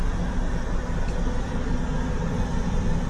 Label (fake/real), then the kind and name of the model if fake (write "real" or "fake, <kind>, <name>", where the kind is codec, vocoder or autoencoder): real